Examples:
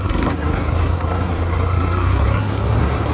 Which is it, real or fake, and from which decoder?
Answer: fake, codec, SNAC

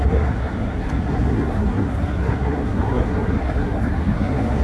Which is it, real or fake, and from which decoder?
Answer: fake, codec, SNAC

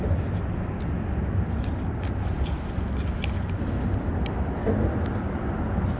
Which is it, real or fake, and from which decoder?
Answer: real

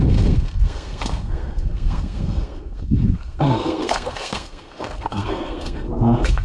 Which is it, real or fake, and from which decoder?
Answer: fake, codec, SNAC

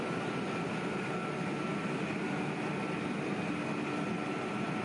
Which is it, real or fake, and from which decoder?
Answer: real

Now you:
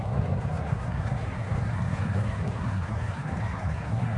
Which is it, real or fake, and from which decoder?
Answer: fake, codec, SNAC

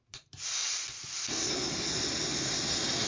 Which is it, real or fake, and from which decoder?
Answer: real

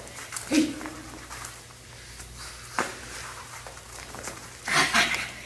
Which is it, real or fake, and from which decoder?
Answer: real